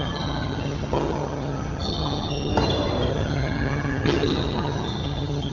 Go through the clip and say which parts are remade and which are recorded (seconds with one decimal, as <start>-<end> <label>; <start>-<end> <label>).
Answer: 0.0-2.5 remade; 2.5-3.1 recorded; 3.1-5.5 remade